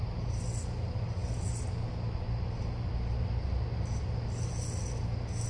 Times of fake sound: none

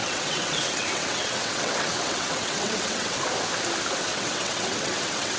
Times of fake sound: 0.0-3.2 (vocoder, WaveNeXt); 4.1-5.4

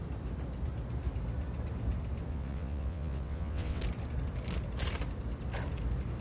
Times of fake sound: 2.3-3.8 (vocoder, WaveNeXt)

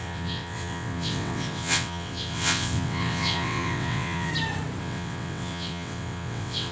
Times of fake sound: 0.0-4.3 (vocoder, WaveNeXt); 4.8-6.7

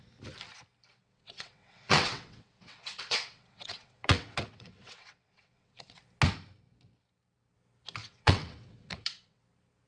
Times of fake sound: 1.0-6.0 (vocoder, WaveNeXt); 8.0-9.4

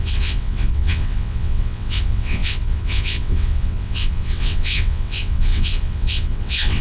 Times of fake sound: 0.0-6.8 (vocoder, WaveNeXt)

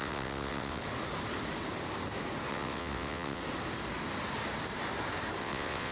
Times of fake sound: 0.0-0.8 (vocoder, WaveNeXt); 2.5-3.4; 5.4-5.9

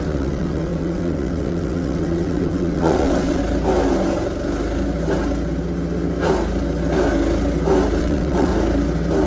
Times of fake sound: 0.0-3.4 (vocoder, WaveNeXt); 8.0-8.5